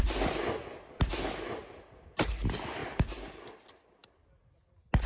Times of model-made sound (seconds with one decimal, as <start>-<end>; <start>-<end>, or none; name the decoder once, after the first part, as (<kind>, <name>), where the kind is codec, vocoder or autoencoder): none